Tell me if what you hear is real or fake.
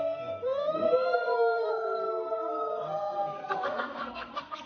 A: fake